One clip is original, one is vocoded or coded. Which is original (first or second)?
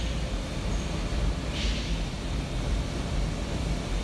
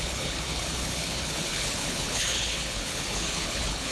first